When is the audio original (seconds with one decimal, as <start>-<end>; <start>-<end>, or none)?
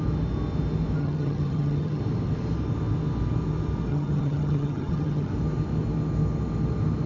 0.0-1.0; 2.0-3.9; 5.3-7.1